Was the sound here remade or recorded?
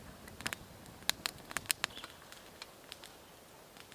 recorded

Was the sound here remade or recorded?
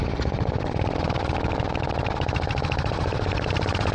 remade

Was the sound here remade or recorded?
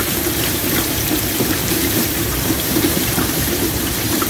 remade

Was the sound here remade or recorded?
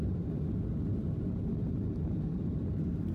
recorded